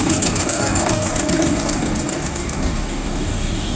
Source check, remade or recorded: remade